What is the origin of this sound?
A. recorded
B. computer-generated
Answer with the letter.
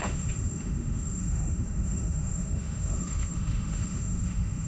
B